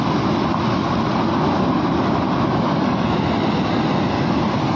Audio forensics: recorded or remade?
recorded